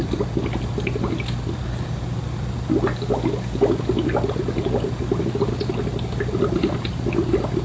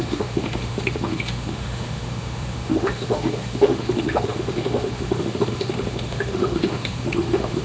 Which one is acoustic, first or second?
first